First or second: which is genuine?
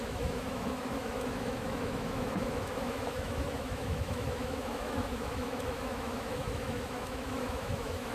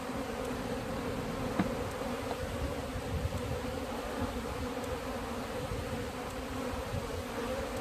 second